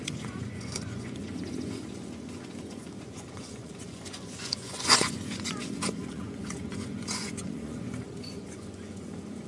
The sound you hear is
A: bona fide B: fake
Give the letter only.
B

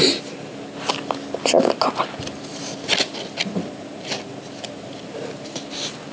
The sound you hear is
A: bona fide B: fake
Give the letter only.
A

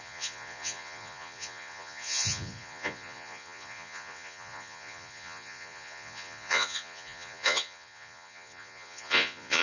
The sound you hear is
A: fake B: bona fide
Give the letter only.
A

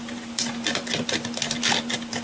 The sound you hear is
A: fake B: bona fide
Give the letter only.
B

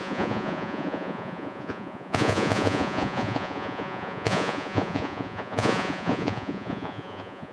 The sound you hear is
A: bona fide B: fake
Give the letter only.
B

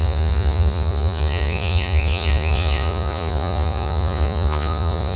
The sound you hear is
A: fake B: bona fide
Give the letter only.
A